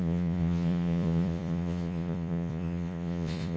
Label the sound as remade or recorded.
remade